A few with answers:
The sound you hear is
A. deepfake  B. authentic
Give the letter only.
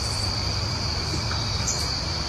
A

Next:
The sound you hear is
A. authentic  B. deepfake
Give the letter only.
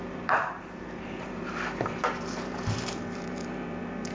B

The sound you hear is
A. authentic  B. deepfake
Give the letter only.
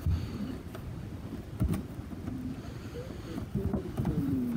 B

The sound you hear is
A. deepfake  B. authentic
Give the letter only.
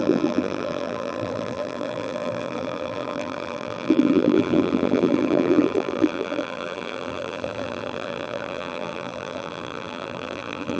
A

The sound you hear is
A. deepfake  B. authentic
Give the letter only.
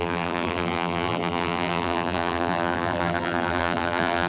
A